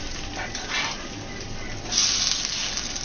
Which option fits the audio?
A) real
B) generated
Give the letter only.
A